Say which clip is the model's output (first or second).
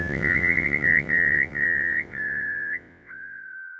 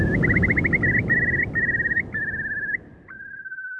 first